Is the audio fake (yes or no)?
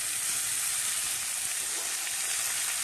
no